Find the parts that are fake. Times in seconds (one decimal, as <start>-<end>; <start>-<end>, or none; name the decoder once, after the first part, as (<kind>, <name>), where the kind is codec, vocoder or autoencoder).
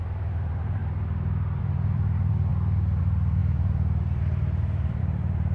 0.0-0.8 (vocoder, BigVGAN v2); 1.6-2.5; 3.0-5.5